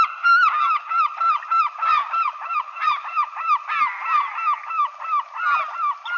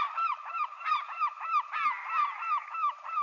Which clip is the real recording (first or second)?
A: first